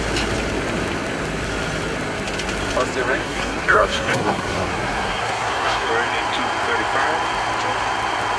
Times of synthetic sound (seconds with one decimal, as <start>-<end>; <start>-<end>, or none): 3.2-5.9